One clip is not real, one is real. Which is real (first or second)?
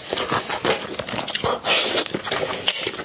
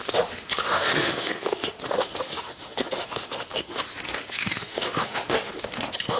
first